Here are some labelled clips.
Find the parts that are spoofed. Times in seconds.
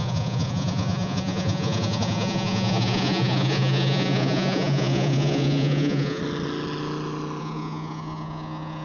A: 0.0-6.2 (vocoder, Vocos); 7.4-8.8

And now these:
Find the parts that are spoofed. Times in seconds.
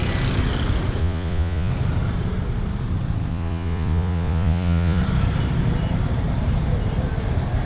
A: 1.0-1.7 (vocoder, Vocos); 3.3-5.0